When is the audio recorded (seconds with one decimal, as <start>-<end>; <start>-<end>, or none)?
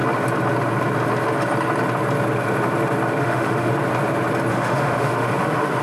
0.0-3.2; 3.7-4.5